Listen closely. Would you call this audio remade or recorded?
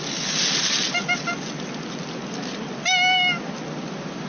recorded